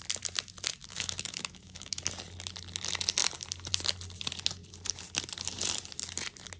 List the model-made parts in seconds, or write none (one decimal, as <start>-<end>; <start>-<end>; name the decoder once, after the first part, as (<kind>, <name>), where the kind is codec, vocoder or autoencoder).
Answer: 0.8-2.0 (autoencoder, DAC-VAE)